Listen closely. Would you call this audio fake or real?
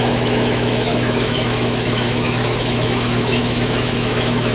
fake